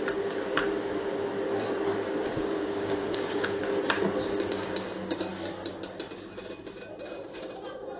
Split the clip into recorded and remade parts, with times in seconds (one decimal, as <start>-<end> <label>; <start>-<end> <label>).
0.0-2.3 recorded; 2.3-3.6 remade; 3.6-8.0 recorded